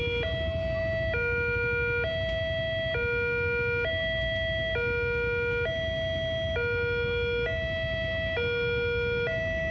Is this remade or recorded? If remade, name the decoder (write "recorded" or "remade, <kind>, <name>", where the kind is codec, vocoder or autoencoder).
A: recorded